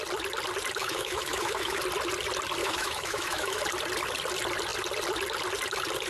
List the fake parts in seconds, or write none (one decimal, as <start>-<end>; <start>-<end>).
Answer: 0.8-1.8; 2.6-3.6

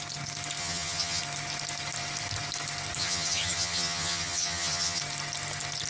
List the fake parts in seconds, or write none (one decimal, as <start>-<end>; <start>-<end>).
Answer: 0.6-1.2; 3.0-5.0

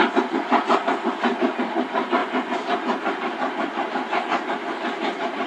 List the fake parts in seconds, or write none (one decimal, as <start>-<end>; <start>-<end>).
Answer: 0.0-2.2

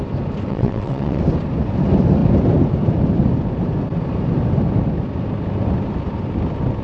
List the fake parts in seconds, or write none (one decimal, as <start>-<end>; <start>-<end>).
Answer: 0.5-1.2

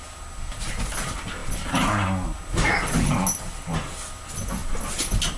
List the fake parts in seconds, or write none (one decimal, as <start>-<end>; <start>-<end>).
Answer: none

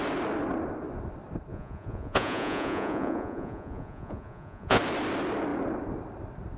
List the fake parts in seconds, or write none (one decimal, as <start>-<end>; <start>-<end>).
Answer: 1.5-4.8

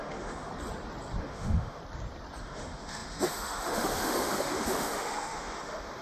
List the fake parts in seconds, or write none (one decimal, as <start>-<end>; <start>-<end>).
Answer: 0.0-0.5; 1.2-1.8; 2.4-6.0